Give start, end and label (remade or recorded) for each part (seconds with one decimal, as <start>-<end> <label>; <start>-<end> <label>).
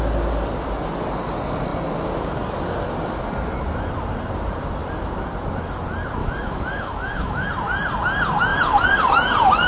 0.0-6.2 recorded; 6.2-7.5 remade; 7.5-9.7 recorded